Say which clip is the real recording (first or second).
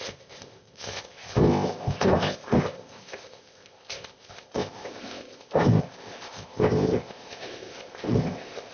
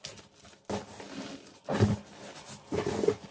second